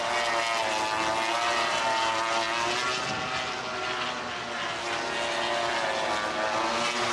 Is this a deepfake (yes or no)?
no